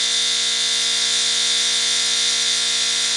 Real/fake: real